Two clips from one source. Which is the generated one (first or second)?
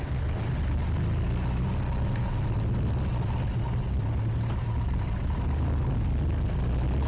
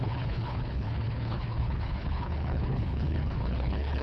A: second